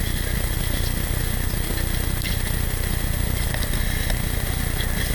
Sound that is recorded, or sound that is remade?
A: recorded